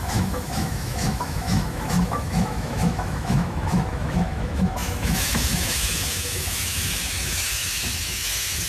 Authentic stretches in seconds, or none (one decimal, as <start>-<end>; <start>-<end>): none